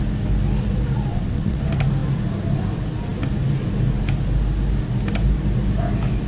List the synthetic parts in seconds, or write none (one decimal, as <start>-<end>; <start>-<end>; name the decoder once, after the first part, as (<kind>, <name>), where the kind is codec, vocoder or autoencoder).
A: 1.1-1.6 (vocoder, WaveNeXt)